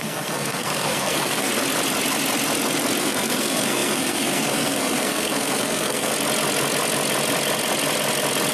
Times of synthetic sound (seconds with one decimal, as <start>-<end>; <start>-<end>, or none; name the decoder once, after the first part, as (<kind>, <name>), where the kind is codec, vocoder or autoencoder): 0.0-1.5 (codec, SNAC); 3.0-6.1